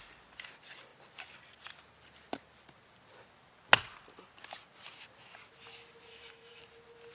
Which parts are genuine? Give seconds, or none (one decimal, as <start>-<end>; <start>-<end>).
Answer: 0.0-6.1; 6.6-7.1